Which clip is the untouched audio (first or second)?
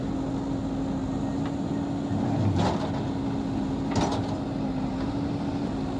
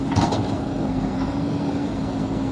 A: first